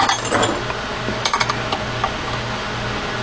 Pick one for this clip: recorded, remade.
recorded